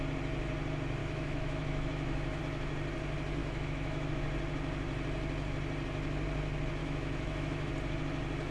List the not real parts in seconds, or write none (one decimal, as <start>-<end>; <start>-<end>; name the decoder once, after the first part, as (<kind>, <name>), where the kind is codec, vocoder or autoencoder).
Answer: 1.0-2.4 (autoencoder, DAC-VAE); 3.4-4.2; 6.8-7.7